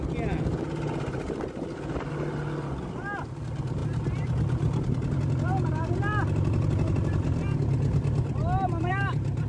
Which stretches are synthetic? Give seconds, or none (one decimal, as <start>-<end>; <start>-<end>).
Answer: none